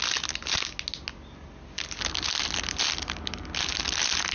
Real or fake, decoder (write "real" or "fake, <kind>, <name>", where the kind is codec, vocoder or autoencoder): real